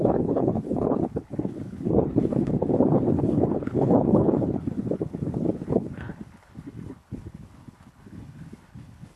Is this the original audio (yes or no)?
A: no